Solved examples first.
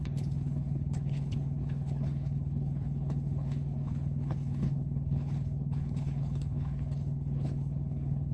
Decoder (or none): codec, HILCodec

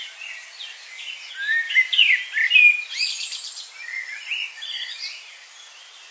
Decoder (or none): none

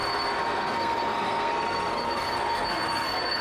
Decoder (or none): codec, SNAC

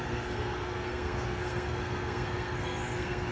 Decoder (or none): codec, SNAC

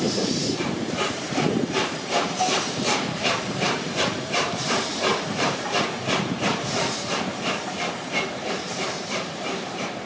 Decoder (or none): vocoder, BigVGAN v2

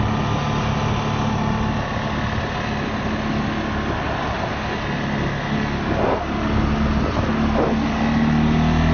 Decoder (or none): none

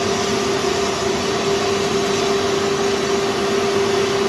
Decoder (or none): none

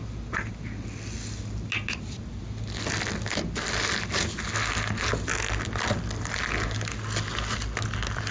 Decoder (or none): none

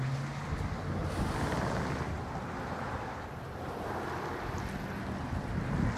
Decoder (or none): none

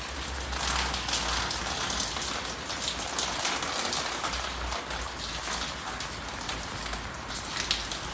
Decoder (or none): none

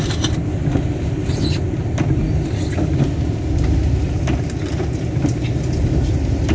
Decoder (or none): none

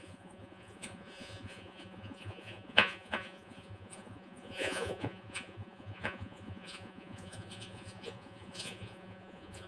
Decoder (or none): vocoder, Vocos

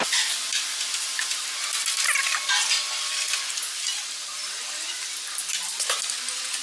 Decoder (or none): none